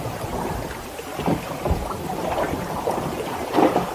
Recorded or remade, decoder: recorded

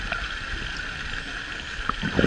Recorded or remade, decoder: recorded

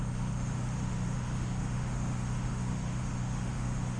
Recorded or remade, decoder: remade, autoencoder, DAC-VAE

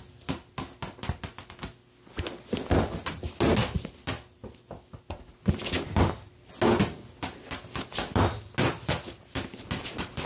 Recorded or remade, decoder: recorded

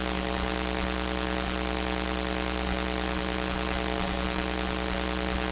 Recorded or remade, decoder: remade, autoencoder, DAC-VAE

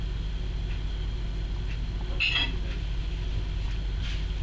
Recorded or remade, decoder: recorded